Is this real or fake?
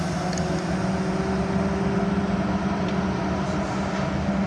real